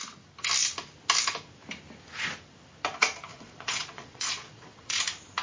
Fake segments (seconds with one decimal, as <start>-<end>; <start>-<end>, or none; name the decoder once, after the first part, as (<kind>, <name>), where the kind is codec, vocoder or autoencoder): 3.3-5.0 (vocoder, Vocos)